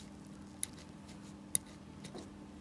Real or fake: real